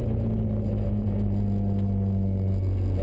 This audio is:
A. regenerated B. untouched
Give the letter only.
B